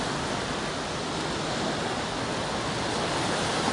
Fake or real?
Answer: real